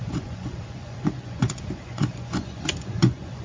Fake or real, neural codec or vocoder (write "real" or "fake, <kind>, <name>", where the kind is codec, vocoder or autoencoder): fake, vocoder, Vocos